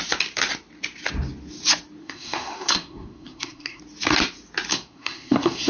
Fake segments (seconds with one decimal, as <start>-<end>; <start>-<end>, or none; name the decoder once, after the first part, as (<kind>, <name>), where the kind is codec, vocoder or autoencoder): 2.0-3.8 (codec, SNAC); 4.7-5.7